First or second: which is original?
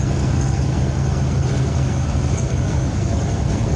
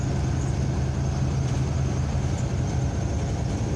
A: second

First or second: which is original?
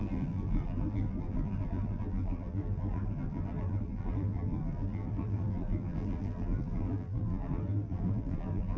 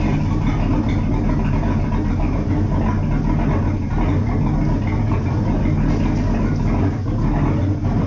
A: second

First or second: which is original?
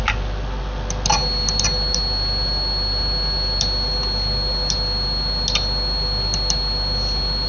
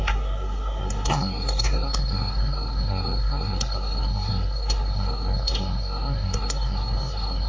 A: first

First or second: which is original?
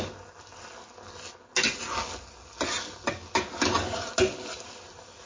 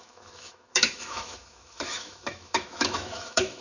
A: first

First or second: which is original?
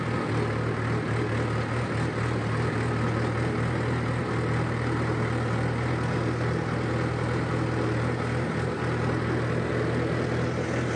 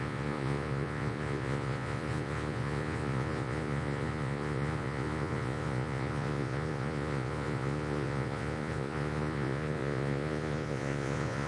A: first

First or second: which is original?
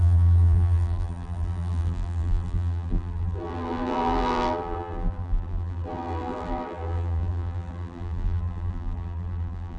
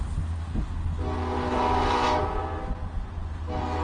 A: second